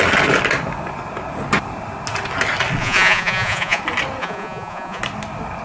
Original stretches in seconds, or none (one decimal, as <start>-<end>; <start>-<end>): 0.0-2.8; 3.8-4.2; 5.0-5.6